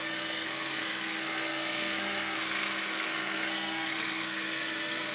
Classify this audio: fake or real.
fake